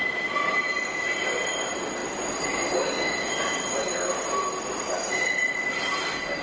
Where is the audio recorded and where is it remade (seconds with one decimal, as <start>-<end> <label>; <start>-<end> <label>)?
0.0-6.4 recorded